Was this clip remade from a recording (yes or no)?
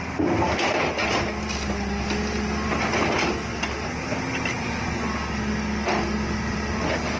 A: no